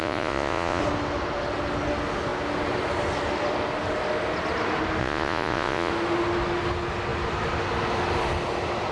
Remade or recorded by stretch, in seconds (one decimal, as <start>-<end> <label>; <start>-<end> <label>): 0.0-0.8 remade; 0.8-5.0 recorded; 5.0-5.9 remade; 5.9-8.9 recorded